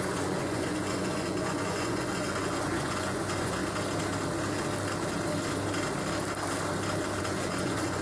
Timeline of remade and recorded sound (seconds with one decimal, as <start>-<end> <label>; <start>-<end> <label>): 0.0-3.6 remade; 3.6-7.2 recorded; 7.2-8.0 remade